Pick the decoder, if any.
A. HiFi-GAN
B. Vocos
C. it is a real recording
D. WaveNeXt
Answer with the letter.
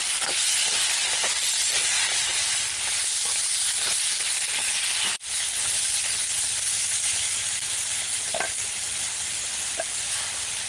C